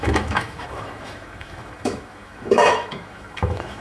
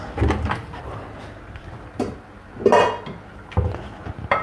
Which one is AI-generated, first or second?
first